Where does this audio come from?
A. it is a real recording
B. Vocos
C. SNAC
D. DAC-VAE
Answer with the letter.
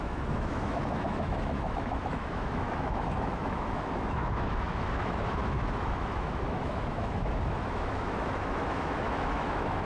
D